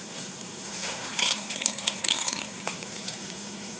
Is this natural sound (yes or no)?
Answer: no